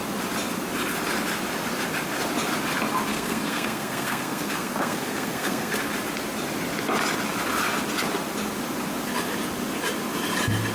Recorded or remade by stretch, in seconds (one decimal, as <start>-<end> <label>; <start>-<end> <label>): 0.0-3.1 recorded; 3.1-5.7 remade; 5.7-10.7 recorded